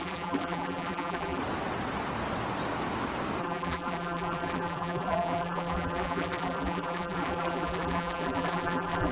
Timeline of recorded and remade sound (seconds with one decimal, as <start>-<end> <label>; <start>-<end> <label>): 0.0-1.4 remade; 1.4-3.4 recorded; 3.4-9.1 remade

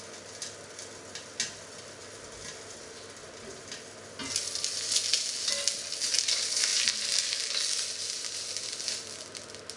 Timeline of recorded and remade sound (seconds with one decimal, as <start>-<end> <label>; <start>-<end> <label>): 0.0-6.7 recorded; 6.7-7.3 remade; 7.3-9.8 recorded

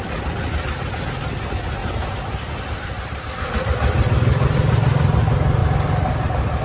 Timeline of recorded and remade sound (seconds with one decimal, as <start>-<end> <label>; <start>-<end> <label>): 0.0-1.8 recorded; 1.8-2.3 remade; 2.3-5.6 recorded; 5.6-6.6 remade

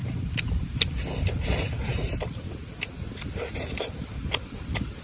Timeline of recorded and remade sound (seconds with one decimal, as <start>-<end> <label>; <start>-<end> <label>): 0.0-1.9 recorded; 1.9-2.9 remade; 2.9-5.0 recorded

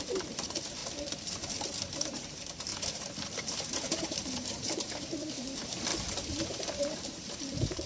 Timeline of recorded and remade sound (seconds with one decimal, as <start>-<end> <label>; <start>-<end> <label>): 0.0-0.8 remade; 0.8-1.6 recorded; 1.6-5.9 remade; 5.9-6.8 recorded; 6.8-7.9 remade

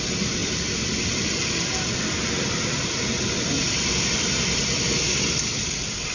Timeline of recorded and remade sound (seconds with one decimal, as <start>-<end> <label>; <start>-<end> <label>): 0.0-0.4 remade; 0.4-2.5 recorded; 2.5-4.6 remade; 4.6-5.2 recorded; 5.2-6.1 remade